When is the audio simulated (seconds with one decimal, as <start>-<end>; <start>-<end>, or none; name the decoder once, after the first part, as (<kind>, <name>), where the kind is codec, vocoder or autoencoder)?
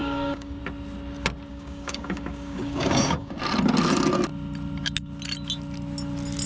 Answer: 0.0-0.6 (codec, DAC); 1.5-3.4